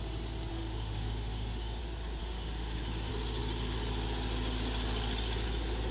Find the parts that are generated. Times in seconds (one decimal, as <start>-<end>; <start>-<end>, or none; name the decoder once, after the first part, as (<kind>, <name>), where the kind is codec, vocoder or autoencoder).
0.5-1.8 (autoencoder, DAC-VAE); 2.2-3.1